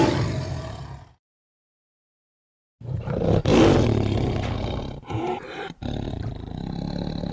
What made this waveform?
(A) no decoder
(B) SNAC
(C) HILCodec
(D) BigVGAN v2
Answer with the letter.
A